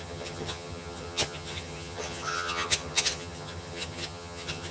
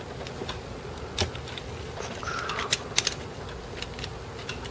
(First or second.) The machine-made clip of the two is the first